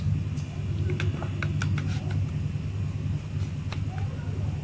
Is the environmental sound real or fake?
real